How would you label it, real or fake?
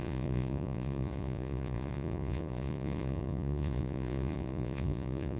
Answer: fake